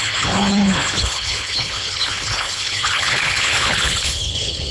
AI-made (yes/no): yes